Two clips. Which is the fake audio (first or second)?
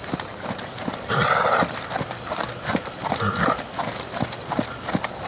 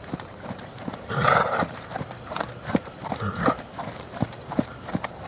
second